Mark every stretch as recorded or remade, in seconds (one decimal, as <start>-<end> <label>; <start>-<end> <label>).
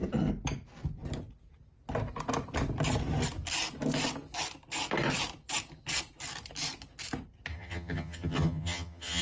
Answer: 0.0-7.5 recorded; 7.5-9.2 remade